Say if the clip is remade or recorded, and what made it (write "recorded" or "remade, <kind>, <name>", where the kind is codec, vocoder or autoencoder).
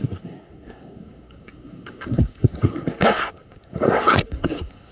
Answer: remade, codec, SNAC